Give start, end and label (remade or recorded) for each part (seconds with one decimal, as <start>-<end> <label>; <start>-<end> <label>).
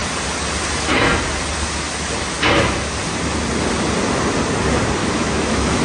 0.0-5.0 recorded; 5.0-5.8 remade